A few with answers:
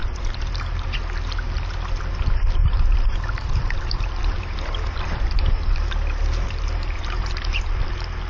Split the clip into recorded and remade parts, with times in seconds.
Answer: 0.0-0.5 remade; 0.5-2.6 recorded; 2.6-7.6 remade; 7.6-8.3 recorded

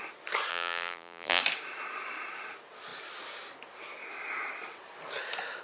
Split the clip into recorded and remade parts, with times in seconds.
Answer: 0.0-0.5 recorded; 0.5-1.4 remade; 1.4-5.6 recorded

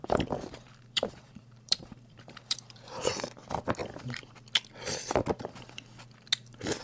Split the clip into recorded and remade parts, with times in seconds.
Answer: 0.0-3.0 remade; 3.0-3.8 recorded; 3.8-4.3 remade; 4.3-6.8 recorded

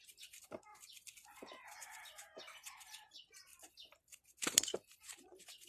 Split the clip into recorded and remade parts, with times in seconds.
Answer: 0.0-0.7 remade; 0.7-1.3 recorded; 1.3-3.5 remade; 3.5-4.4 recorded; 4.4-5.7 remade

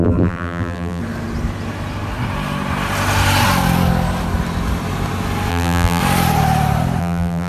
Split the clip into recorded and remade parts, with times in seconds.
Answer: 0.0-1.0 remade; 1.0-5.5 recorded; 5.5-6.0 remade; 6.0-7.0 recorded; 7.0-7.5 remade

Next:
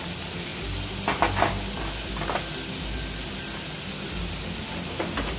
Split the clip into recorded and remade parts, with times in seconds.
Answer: 0.0-5.4 recorded

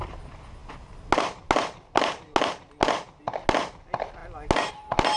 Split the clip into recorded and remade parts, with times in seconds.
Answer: 0.0-5.2 recorded

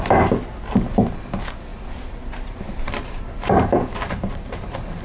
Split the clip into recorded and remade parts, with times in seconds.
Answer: 0.0-1.7 recorded; 1.7-5.0 remade